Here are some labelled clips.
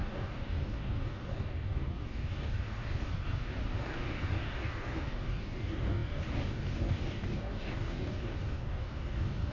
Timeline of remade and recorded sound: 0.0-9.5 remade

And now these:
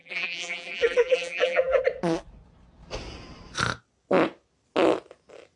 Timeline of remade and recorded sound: 0.0-1.8 remade; 1.8-5.6 recorded

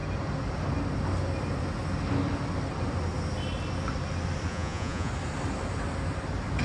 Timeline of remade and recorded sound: 0.0-4.5 recorded; 4.5-5.1 remade; 5.1-6.6 recorded

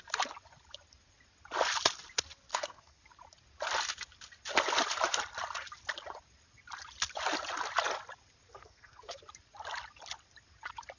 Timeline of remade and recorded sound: 0.0-2.5 recorded; 2.5-3.0 remade; 3.0-8.5 recorded; 8.5-9.2 remade; 9.2-11.0 recorded

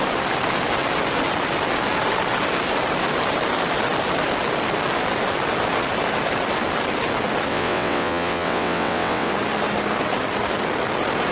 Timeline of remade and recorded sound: 0.0-7.5 recorded; 7.5-9.3 remade; 9.3-11.3 recorded

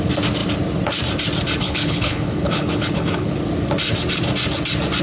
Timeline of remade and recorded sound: 0.0-1.6 recorded; 1.6-3.3 remade; 3.3-5.0 recorded

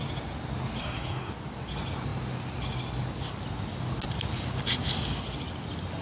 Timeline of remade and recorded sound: 0.0-0.8 recorded; 0.8-1.3 remade; 1.3-6.0 recorded

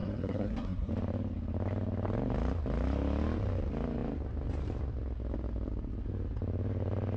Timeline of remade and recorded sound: 0.0-0.9 remade; 0.9-7.2 recorded